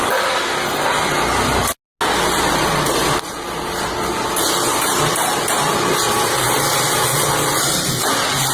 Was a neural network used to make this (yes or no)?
no